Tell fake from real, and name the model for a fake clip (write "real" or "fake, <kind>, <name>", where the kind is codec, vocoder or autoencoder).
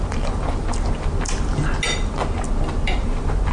real